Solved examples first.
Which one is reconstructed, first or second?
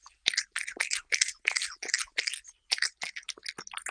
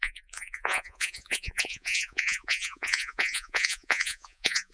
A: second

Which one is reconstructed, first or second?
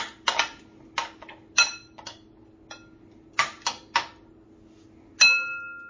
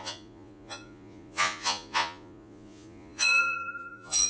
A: second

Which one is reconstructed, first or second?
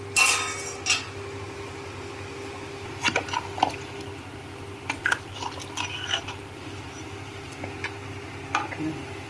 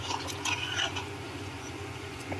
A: second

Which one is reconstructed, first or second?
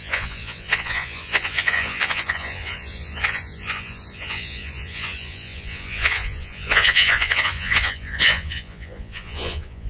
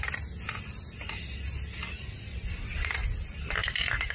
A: first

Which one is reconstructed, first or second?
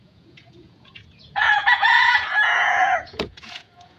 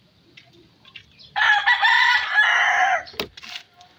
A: first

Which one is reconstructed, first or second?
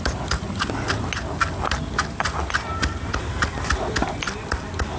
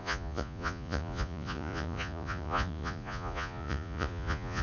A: second